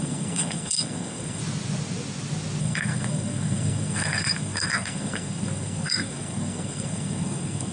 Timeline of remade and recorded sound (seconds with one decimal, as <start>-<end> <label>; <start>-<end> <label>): 0.0-1.4 remade; 1.4-2.6 recorded; 2.6-7.7 remade